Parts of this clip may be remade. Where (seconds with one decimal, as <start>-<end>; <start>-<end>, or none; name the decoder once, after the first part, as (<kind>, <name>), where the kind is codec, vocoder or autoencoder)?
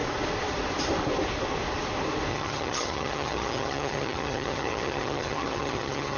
2.3-6.2 (vocoder, HiFi-GAN)